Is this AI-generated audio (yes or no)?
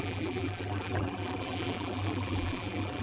yes